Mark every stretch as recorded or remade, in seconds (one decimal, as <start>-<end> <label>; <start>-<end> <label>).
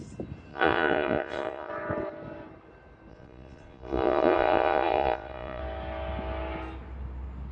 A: 0.0-0.5 recorded; 0.5-1.7 remade; 1.7-3.1 recorded; 3.1-5.6 remade; 5.6-7.5 recorded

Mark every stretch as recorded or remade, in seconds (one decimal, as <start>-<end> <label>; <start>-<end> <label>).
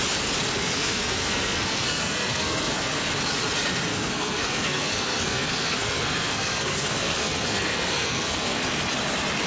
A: 0.0-0.6 recorded; 0.6-3.1 remade; 3.1-3.9 recorded; 3.9-8.6 remade; 8.6-9.5 recorded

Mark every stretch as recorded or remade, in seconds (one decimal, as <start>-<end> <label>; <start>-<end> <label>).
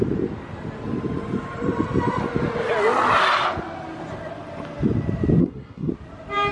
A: 0.0-5.4 recorded; 5.4-5.9 remade; 5.9-6.5 recorded